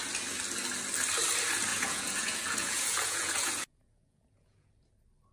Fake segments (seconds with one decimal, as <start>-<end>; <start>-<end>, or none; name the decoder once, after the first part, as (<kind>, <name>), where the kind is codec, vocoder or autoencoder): 1.7-4.7 (vocoder, Vocos)